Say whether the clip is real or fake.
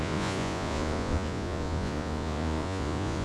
fake